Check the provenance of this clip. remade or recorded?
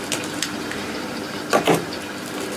recorded